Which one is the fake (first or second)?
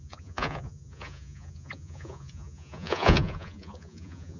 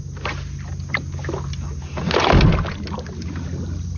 first